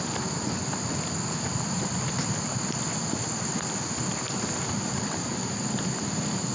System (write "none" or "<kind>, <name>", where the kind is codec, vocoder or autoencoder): none